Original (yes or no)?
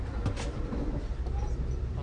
yes